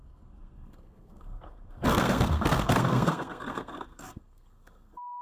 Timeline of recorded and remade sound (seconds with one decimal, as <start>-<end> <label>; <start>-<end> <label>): 0.0-5.2 remade